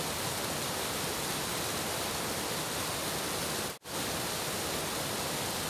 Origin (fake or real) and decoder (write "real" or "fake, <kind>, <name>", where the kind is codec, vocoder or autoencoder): real